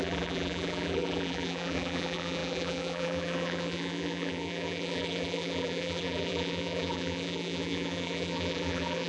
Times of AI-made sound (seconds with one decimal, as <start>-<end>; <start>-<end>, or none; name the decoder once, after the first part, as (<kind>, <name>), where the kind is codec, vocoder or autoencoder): 0.0-9.1 (vocoder, BigVGAN v2)